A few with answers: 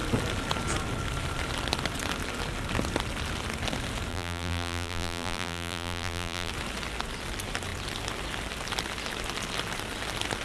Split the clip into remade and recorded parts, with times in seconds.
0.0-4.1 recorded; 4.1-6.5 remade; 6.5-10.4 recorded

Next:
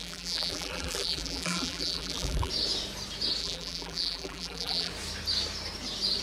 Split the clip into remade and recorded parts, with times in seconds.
0.0-2.5 remade; 2.5-3.4 recorded; 3.4-4.9 remade; 4.9-6.2 recorded